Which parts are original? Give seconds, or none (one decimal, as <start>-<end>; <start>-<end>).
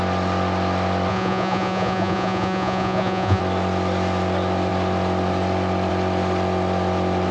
0.0-1.1; 3.4-7.3